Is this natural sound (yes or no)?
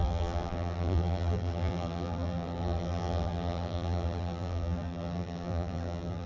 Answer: no